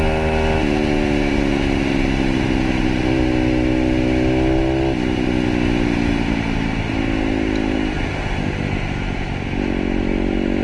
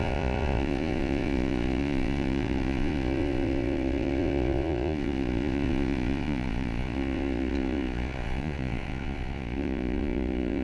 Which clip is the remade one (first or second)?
second